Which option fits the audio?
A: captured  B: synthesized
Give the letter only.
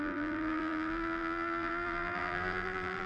B